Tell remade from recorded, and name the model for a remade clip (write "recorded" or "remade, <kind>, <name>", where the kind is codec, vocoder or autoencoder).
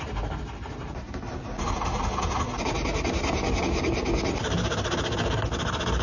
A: recorded